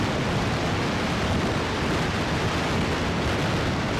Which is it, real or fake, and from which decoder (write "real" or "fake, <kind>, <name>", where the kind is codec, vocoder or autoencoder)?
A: real